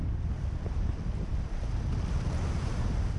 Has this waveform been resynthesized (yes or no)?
no